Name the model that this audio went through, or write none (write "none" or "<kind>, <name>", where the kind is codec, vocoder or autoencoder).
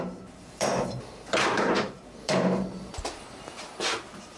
vocoder, BigVGAN v2